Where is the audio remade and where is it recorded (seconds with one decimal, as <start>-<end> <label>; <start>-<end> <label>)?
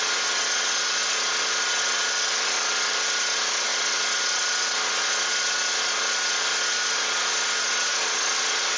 0.0-8.8 recorded